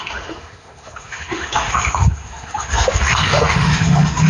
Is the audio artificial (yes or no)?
yes